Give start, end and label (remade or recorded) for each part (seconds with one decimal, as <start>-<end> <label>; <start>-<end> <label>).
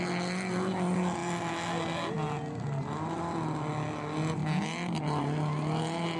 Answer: 0.0-6.2 recorded